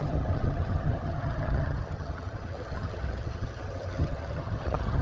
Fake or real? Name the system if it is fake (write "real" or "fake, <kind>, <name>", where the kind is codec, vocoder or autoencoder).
fake, vocoder, HiFi-GAN